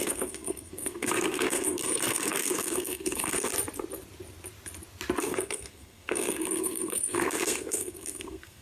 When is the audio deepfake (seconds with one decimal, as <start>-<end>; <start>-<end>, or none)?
0.0-3.5; 5.2-8.6